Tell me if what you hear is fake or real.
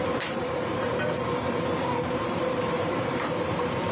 fake